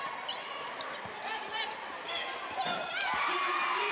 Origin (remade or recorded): remade